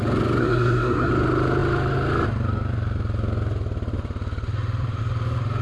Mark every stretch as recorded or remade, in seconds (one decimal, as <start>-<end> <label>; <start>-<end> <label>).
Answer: 0.0-0.4 recorded; 0.4-1.1 remade; 1.1-5.6 recorded